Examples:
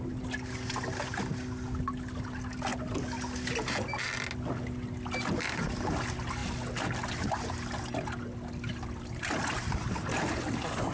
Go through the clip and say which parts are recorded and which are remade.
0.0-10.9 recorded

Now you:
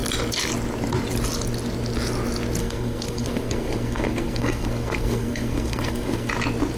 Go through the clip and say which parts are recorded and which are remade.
0.0-2.6 recorded; 2.6-6.3 remade; 6.3-6.8 recorded

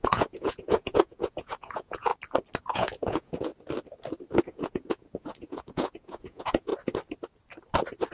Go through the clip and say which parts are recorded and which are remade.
0.0-2.1 remade; 2.1-2.6 recorded; 2.6-3.5 remade; 3.5-4.4 recorded; 4.4-6.7 remade; 6.7-8.1 recorded